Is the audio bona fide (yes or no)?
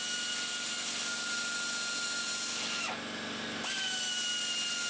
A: yes